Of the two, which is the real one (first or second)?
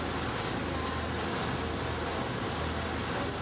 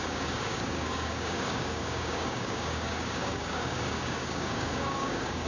first